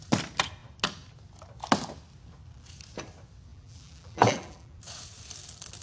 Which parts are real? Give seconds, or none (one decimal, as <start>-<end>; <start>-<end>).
0.0-3.5; 4.8-5.8